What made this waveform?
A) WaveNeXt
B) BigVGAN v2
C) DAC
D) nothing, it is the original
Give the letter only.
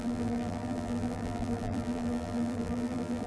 B